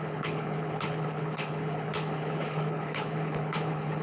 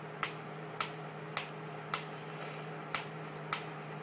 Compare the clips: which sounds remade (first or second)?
first